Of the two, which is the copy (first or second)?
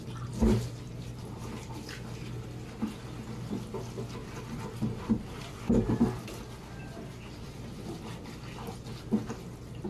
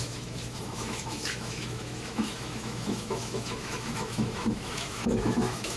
second